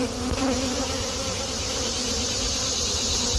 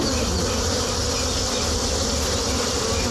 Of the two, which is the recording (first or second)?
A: second